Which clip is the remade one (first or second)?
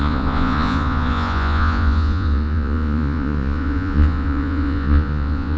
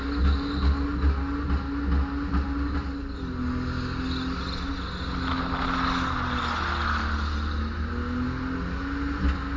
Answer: first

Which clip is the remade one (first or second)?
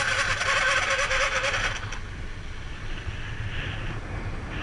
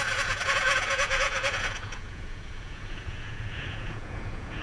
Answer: second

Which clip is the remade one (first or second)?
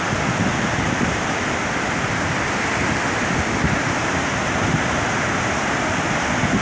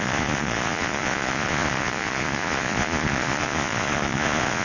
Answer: second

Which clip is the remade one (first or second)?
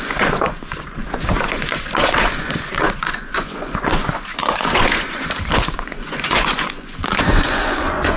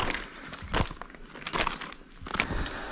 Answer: first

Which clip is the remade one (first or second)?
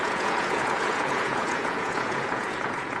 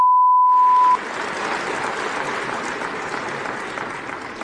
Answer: first